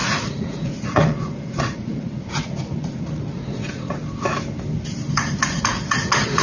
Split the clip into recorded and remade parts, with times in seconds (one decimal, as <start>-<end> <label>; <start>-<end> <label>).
0.0-4.0 remade; 4.0-5.1 recorded; 5.1-6.4 remade